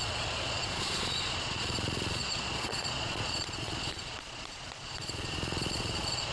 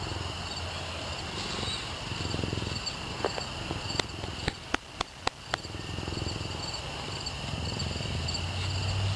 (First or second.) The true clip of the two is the second